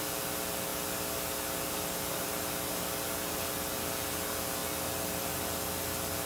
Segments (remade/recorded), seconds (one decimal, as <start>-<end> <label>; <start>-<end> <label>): 0.0-6.3 recorded